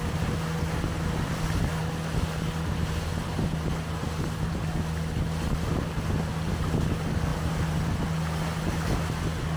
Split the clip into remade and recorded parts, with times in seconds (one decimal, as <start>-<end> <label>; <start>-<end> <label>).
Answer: 0.0-9.6 recorded